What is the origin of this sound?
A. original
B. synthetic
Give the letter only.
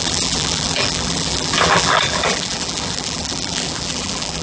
B